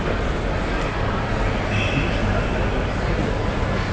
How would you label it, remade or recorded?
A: recorded